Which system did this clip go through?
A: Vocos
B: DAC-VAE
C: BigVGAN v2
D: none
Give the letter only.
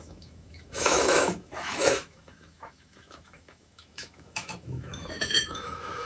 B